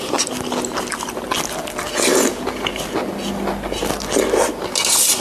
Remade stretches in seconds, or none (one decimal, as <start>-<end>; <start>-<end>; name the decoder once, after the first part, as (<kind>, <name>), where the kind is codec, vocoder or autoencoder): none